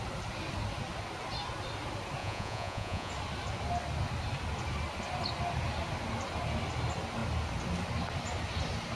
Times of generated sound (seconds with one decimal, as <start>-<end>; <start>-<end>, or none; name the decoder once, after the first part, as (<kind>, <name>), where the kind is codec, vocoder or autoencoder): 2.2-3.1 (vocoder, Vocos)